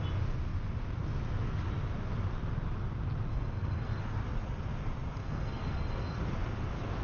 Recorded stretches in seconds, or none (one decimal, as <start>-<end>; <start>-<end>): 0.0-3.3; 4.0-5.2; 6.2-7.0

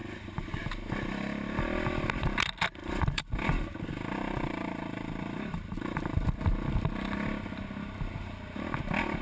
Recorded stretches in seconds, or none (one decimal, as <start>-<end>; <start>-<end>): 0.6-2.8; 6.4-9.2